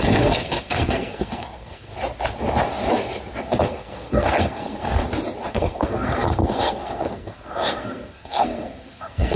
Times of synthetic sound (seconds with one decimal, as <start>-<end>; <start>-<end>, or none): 0.0-1.9; 3.6-5.0; 5.5-9.4